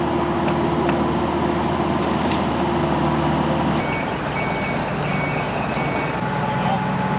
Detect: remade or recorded recorded